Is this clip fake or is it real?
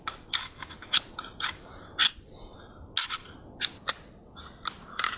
real